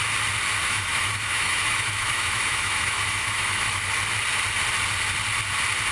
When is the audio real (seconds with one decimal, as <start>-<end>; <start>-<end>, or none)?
0.0-0.6; 3.9-5.9